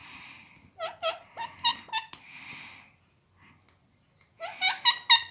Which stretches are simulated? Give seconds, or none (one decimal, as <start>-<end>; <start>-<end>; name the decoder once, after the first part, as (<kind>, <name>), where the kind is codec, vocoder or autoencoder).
none